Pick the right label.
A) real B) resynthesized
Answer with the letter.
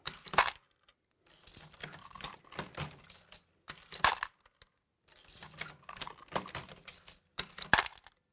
A